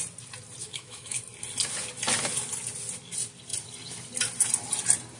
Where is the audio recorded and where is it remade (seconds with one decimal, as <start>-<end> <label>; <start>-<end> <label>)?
0.0-0.6 recorded; 0.6-1.2 remade; 1.2-5.2 recorded